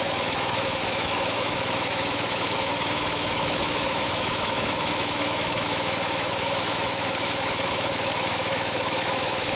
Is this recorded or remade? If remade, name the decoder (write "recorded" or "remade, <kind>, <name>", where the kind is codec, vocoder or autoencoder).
remade, autoencoder, DAC-VAE